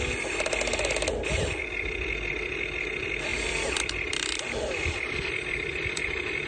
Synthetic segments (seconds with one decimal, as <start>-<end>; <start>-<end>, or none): 3.3-6.5